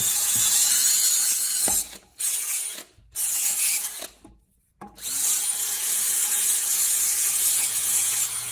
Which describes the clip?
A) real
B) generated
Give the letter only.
B